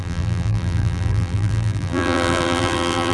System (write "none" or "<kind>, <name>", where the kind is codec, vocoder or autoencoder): vocoder, BigVGAN v2